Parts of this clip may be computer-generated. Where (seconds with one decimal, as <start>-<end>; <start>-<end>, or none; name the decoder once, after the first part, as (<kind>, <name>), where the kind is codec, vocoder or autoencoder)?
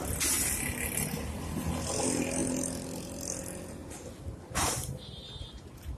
none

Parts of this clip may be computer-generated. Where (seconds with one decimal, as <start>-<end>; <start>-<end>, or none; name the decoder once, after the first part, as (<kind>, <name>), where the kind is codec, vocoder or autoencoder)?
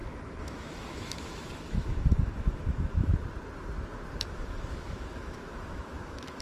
0.0-3.1 (autoencoder, DAC-VAE); 4.2-6.4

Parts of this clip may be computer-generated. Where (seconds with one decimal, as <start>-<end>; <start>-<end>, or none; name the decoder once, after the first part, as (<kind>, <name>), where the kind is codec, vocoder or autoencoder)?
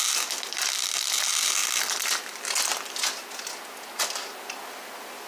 none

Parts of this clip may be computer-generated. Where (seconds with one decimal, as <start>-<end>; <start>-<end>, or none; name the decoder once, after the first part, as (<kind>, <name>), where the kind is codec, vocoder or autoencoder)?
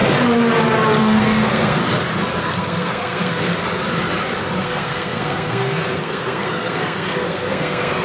1.0-1.8 (codec, SNAC); 2.4-3.5; 4.6-8.0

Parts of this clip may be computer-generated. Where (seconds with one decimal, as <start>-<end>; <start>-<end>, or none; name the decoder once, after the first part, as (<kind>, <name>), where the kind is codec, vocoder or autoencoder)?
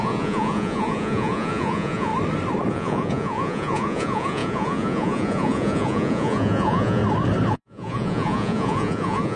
0.0-2.1 (vocoder, Vocos); 2.7-7.0; 7.5-9.4